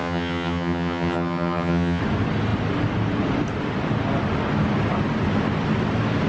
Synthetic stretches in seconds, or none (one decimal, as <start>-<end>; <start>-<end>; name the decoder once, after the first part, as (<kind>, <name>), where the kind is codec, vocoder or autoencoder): 0.0-2.0 (vocoder, HiFi-GAN)